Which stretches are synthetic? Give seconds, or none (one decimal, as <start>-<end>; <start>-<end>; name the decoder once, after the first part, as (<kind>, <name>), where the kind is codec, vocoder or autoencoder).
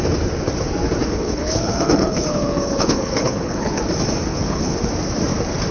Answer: 1.0-3.8 (codec, HILCodec); 4.3-4.9